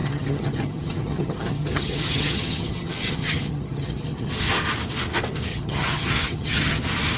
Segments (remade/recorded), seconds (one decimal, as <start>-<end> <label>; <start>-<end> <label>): 0.0-4.3 remade; 4.3-5.5 recorded; 5.5-6.8 remade; 6.8-7.2 recorded